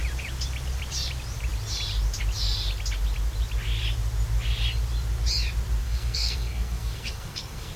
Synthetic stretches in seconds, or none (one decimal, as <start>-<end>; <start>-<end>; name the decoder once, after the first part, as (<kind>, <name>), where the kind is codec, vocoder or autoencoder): 5.8-7.8 (codec, SNAC)